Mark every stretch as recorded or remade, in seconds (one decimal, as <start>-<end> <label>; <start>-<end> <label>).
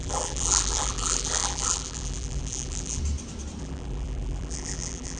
0.0-3.0 remade; 3.0-3.6 recorded; 3.6-5.2 remade